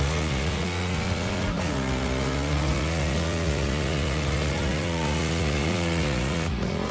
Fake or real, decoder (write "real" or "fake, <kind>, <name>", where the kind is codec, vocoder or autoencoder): fake, vocoder, Vocos